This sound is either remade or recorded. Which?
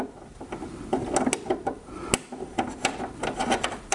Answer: recorded